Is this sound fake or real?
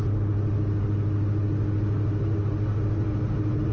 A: real